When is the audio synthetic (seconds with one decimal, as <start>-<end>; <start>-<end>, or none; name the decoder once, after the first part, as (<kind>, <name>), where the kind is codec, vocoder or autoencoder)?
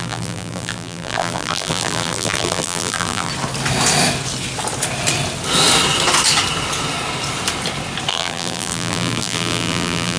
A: 0.0-3.3 (vocoder, BigVGAN v2); 8.1-10.2